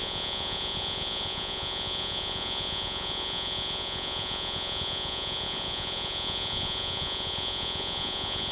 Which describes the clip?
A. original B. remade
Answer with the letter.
B